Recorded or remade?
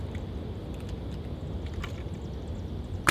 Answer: recorded